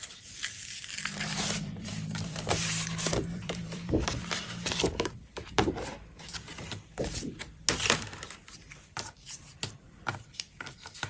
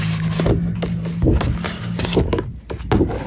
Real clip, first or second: second